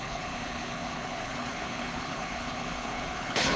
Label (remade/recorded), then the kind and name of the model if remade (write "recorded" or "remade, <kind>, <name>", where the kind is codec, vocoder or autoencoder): remade, codec, HILCodec